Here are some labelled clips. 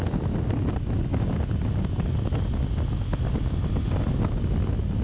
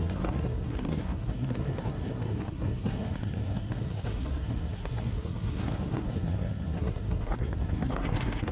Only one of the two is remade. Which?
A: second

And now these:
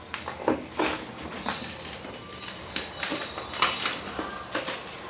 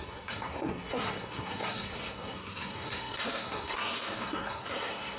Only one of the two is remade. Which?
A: second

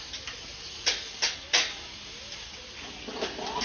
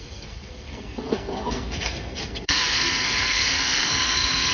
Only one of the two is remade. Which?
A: second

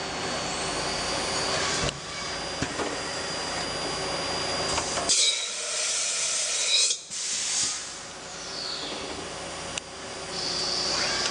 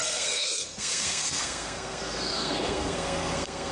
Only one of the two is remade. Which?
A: second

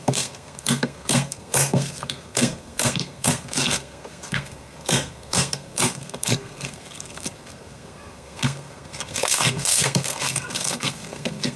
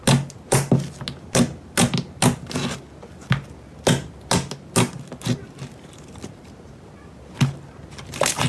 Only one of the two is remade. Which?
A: first